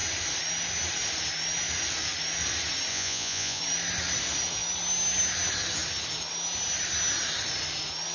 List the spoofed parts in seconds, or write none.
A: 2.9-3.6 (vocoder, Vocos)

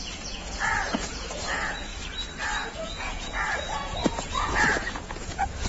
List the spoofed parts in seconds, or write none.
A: 0.0-1.9 (vocoder, Vocos); 2.7-5.7

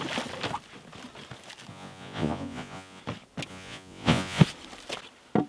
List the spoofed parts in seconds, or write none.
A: 1.7-3.0 (vocoder, Vocos); 3.5-4.4

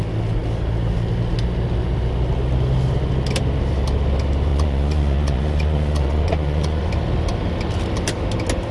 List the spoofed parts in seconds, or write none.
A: 4.5-6.9 (vocoder, Vocos)

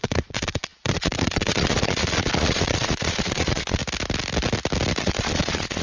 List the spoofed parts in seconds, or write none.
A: 0.0-3.8 (vocoder, Vocos); 5.0-5.8

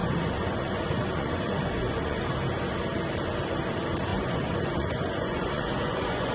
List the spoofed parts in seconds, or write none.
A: 0.0-2.2 (vocoder, Vocos); 4.1-6.3

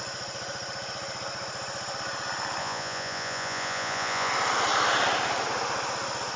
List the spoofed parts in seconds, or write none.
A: 2.6-4.3 (vocoder, Vocos)